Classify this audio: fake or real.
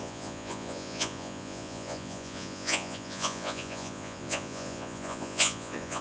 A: fake